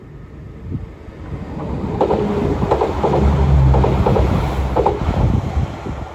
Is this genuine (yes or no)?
yes